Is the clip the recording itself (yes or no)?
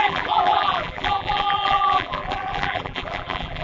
no